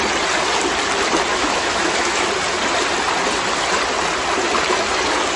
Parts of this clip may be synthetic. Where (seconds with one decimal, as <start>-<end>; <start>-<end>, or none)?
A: 1.3-2.3